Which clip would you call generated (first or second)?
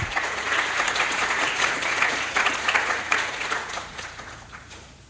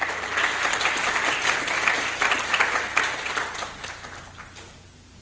first